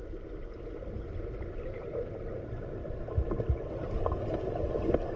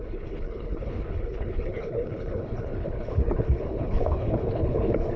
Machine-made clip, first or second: second